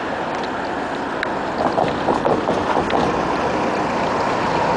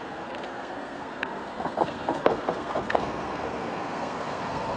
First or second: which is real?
first